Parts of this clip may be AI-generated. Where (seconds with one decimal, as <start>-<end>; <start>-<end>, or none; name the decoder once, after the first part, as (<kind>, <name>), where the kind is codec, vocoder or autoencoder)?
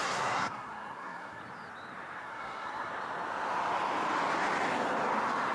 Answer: 0.0-1.4 (codec, SNAC); 2.2-2.9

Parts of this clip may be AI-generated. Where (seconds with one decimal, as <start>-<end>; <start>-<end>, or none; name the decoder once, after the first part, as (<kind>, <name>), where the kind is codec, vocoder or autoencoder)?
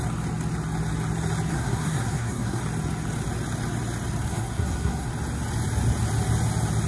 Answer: 1.5-2.6 (codec, SNAC); 4.3-5.1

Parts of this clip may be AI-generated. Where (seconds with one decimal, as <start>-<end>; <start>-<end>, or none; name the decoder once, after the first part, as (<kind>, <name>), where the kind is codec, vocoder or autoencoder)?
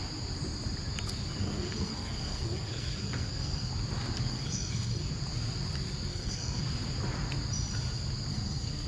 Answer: 1.4-3.7 (codec, SNAC); 4.3-5.1; 6.1-6.6; 8.3-8.9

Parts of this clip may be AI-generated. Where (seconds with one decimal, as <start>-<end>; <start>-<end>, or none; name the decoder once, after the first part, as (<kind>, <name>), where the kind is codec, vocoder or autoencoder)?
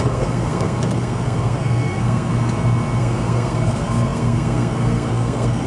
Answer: 0.0-2.3 (codec, SNAC); 3.0-5.7